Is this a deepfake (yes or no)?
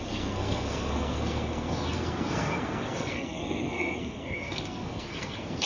yes